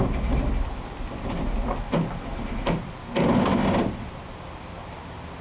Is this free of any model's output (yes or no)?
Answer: yes